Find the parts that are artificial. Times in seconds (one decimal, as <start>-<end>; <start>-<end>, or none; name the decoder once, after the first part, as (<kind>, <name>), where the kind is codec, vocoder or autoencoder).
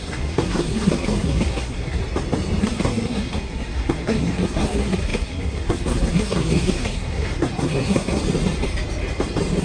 0.0-2.0 (codec, SNAC); 2.6-8.2